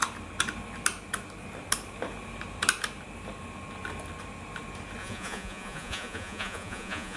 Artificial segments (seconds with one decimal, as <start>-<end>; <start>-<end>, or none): 5.0-7.2